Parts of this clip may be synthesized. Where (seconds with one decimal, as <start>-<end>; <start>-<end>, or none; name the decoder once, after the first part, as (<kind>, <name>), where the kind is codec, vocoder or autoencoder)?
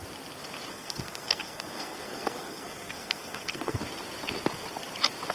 0.7-3.8 (codec, SNAC)